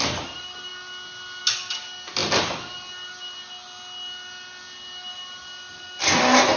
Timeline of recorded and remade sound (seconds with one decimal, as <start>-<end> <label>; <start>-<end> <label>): 0.0-6.6 recorded